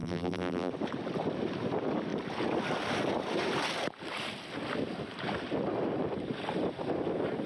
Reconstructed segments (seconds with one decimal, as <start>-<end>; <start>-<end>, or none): 0.0-0.7